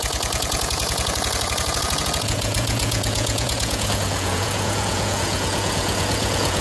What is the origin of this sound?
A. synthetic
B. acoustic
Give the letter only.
A